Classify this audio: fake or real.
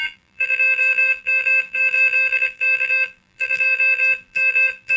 fake